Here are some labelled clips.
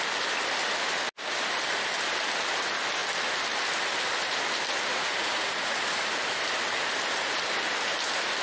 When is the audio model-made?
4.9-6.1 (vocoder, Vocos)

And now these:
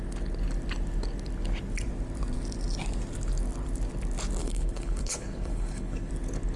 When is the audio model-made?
4.4-6.1 (codec, HILCodec)

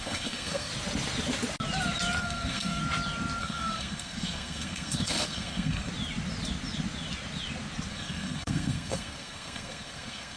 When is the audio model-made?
0.0-0.7 (codec, SNAC); 2.2-2.8; 3.4-5.9; 7.9-10.4

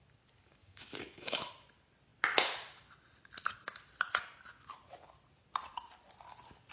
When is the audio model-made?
0.6-1.5 (autoencoder, DAC-VAE)

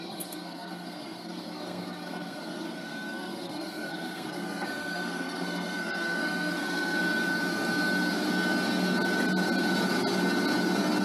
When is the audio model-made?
0.0-7.0 (codec, SNAC)